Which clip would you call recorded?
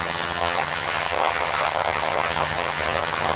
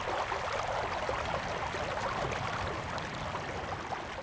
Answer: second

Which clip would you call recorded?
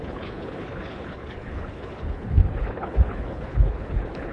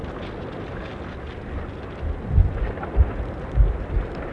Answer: second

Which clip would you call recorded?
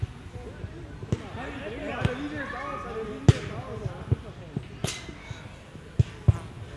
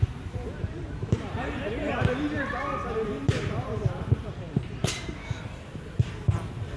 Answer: first